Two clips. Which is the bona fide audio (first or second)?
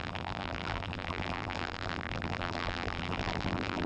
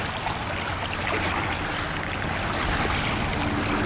second